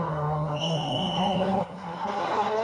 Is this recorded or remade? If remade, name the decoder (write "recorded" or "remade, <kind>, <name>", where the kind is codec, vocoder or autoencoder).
remade, codec, SNAC